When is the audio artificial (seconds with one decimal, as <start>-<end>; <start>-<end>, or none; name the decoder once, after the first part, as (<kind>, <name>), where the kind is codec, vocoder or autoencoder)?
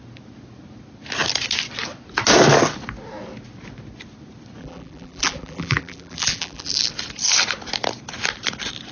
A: 4.6-6.9 (vocoder, BigVGAN v2)